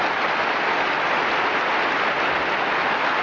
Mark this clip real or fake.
real